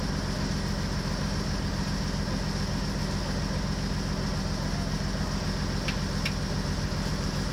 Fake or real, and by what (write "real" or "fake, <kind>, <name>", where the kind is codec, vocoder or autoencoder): real